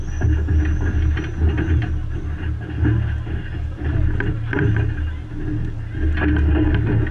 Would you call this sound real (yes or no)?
yes